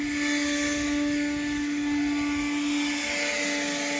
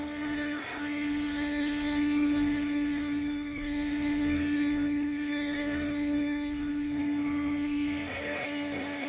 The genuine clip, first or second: first